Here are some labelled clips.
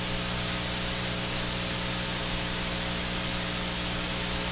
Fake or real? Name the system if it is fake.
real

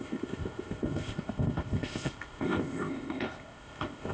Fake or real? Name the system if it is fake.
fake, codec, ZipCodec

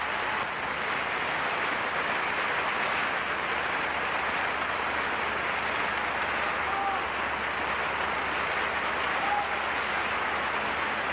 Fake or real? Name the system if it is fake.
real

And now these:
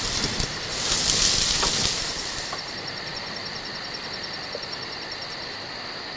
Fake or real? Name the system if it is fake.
real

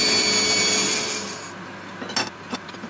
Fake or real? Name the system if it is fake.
real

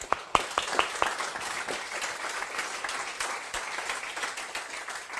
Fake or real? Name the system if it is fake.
real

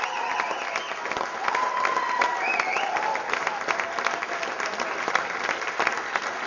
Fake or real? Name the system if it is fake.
real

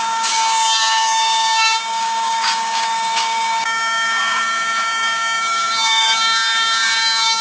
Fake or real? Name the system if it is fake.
fake, codec, DAC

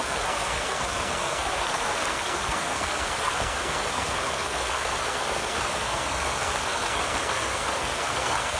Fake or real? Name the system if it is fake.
fake, codec, SNAC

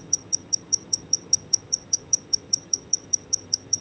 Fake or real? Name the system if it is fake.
fake, vocoder, HiFi-GAN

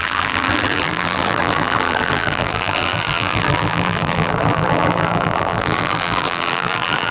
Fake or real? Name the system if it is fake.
fake, vocoder, BigVGAN v2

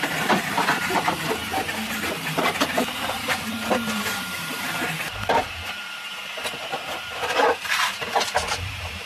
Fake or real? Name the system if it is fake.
fake, vocoder, BigVGAN v2